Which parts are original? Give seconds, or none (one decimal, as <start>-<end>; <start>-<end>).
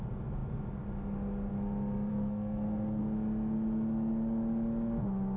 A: 0.0-2.1; 3.0-5.4